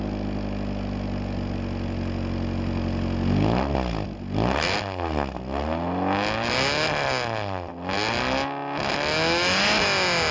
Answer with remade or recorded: recorded